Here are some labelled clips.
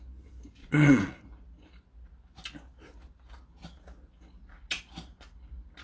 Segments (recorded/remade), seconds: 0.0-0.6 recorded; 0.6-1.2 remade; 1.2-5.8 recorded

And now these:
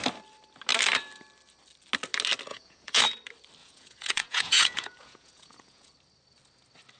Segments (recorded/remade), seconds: 0.0-2.5 recorded; 2.5-3.0 remade; 3.0-3.6 recorded; 3.6-5.9 remade; 5.9-7.0 recorded